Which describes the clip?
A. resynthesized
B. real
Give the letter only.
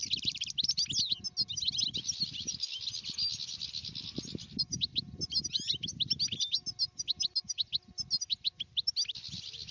B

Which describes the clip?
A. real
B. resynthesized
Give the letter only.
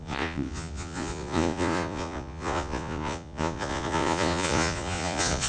B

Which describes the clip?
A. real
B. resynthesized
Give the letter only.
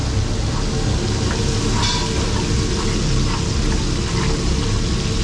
A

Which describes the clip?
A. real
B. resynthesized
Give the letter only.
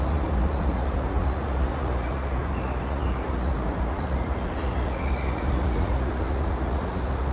B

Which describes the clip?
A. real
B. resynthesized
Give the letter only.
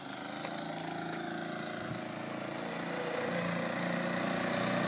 A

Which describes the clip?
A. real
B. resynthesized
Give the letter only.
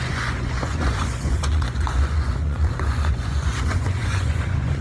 B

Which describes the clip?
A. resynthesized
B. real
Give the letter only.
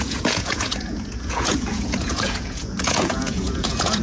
A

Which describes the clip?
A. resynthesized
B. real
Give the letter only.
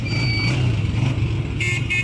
B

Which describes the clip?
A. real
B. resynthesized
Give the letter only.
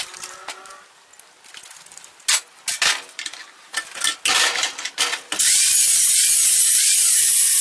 A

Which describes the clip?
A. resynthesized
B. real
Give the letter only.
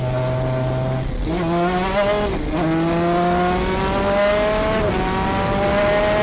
B